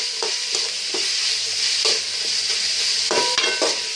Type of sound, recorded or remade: recorded